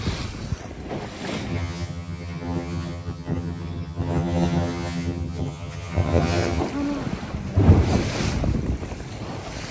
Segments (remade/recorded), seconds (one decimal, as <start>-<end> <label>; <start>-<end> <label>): 0.0-1.5 recorded; 1.5-6.6 remade; 6.6-9.7 recorded